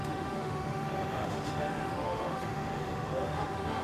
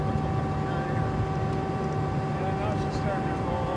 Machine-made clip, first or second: first